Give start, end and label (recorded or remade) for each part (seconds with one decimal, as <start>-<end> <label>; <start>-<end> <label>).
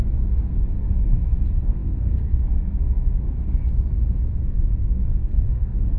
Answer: 0.0-3.6 remade; 3.6-4.7 recorded; 4.7-6.0 remade